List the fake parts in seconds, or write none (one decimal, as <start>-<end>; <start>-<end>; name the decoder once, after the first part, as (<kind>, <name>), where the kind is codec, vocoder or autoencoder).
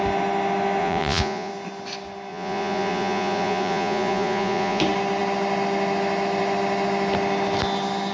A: 0.8-1.5 (vocoder, Vocos); 2.3-4.8